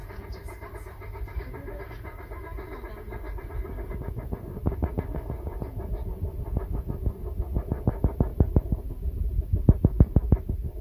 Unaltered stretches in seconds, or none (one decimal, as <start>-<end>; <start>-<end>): 1.9-8.3; 8.9-10.8

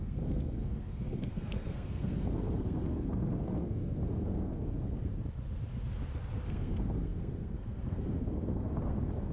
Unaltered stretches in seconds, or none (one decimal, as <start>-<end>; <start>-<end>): 5.1-6.5

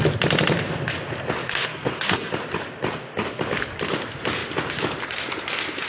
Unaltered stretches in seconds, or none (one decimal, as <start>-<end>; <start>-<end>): 0.0-1.6; 2.3-5.9